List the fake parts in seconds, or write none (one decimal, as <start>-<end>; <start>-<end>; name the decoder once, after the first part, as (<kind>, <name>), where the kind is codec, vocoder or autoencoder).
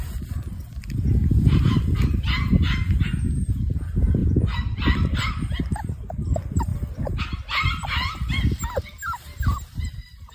6.7-7.2 (vocoder, BigVGAN v2)